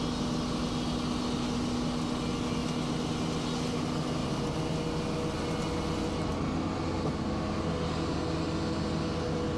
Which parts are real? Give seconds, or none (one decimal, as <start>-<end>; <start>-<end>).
0.0-9.6